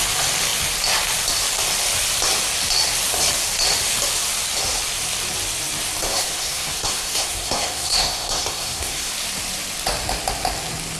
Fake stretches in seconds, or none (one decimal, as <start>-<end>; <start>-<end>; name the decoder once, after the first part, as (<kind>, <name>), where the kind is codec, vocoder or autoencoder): 6.0-9.1 (codec, SNAC)